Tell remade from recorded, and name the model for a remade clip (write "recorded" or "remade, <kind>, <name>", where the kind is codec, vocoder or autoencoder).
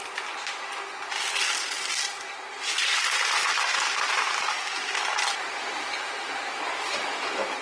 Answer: recorded